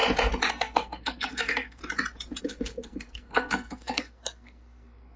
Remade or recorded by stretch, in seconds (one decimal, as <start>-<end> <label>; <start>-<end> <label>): 0.0-0.5 recorded; 0.5-1.8 remade; 1.8-2.4 recorded; 2.4-5.2 remade